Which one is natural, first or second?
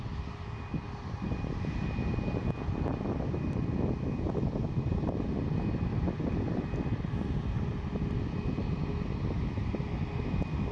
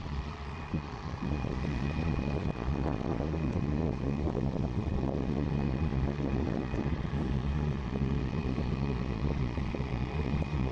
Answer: first